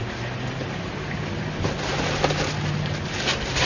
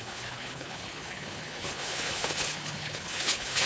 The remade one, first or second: second